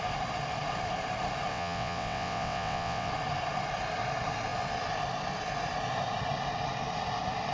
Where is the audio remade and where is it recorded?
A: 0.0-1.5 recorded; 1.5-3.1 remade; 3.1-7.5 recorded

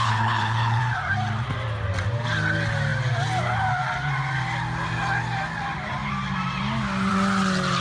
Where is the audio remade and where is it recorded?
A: 0.0-0.8 remade; 0.8-7.8 recorded

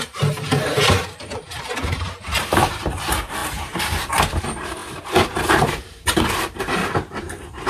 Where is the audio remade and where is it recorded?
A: 0.0-7.7 remade

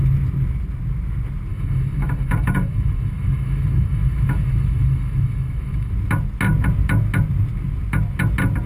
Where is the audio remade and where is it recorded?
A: 0.0-1.5 recorded; 1.5-5.9 remade; 5.9-8.7 recorded

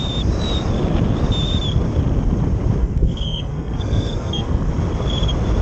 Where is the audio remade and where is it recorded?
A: 0.0-2.8 recorded; 2.8-4.7 remade; 4.7-5.6 recorded

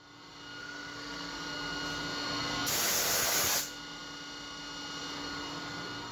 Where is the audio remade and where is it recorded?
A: 0.0-0.6 recorded; 0.6-1.3 remade; 1.3-6.1 recorded

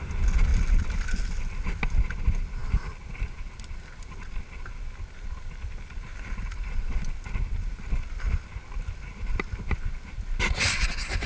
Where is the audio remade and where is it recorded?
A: 0.0-11.3 recorded